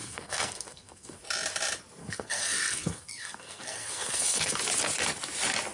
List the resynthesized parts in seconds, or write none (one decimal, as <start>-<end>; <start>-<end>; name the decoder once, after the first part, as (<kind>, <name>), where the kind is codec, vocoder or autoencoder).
0.0-1.2 (codec, SNAC); 2.0-4.6